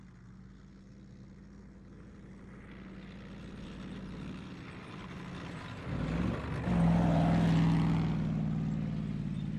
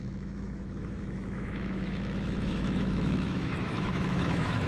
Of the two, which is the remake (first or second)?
second